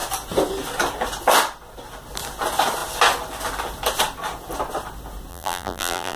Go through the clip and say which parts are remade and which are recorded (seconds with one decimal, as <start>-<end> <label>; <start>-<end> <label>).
0.0-5.3 recorded; 5.3-6.2 remade